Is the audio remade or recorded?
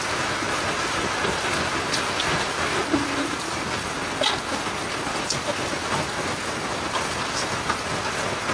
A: recorded